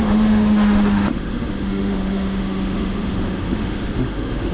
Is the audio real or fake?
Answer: fake